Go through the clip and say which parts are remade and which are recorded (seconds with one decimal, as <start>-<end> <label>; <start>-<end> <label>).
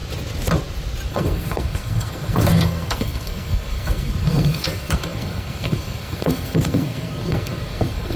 0.0-1.1 recorded; 1.1-8.2 remade